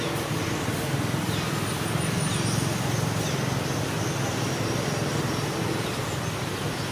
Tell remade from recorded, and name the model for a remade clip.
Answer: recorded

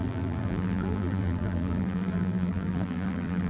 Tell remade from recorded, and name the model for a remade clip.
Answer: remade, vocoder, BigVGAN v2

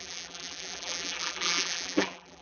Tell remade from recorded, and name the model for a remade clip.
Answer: remade, vocoder, BigVGAN v2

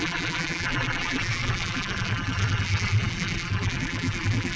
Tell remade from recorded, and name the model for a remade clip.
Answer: remade, vocoder, BigVGAN v2